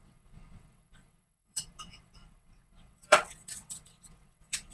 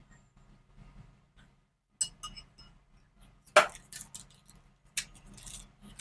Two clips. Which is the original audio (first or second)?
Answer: second